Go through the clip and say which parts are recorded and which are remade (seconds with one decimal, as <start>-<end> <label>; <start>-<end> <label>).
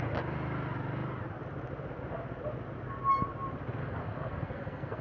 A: 0.0-3.8 recorded; 3.8-5.0 remade